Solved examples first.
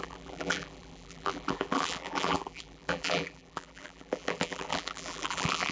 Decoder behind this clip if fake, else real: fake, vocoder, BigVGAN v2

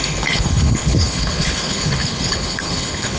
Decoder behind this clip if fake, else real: fake, codec, HILCodec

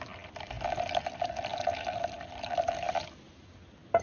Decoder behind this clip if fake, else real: real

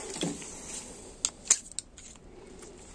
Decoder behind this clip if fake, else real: real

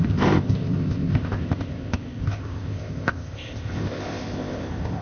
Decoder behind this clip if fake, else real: fake, codec, ZipCodec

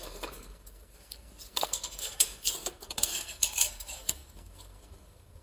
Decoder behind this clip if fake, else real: fake, codec, SNAC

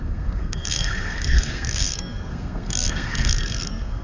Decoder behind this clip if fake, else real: fake, codec, SNAC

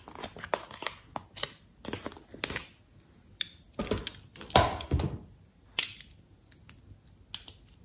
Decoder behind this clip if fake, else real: real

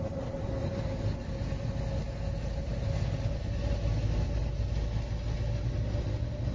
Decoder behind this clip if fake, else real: real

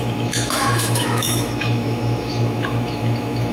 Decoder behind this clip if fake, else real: fake, autoencoder, DAC-VAE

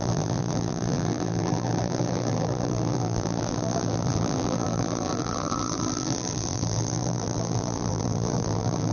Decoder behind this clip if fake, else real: fake, vocoder, BigVGAN v2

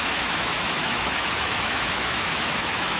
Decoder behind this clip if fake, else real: fake, autoencoder, DAC-VAE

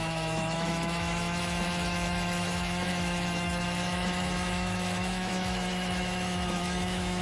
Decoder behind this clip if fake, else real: fake, autoencoder, DAC-VAE